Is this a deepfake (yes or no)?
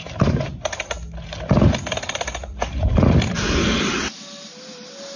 no